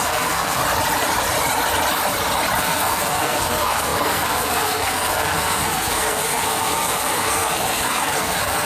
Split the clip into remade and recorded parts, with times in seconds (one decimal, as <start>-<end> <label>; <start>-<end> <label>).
0.0-0.6 remade; 0.6-2.6 recorded; 2.6-8.7 remade